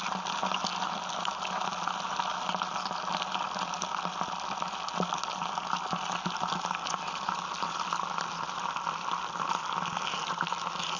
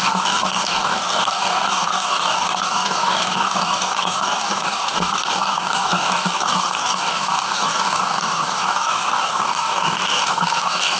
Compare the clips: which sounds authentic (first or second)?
first